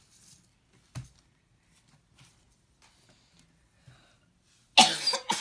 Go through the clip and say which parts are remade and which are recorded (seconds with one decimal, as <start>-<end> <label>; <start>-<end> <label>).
0.0-5.4 recorded